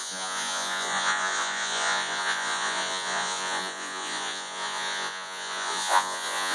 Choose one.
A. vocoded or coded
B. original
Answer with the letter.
A